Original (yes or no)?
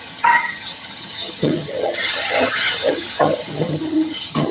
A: no